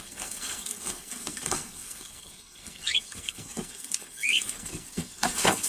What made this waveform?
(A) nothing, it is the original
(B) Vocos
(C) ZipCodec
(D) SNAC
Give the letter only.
D